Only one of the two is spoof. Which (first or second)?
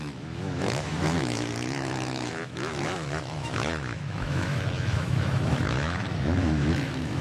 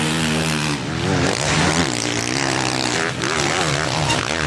first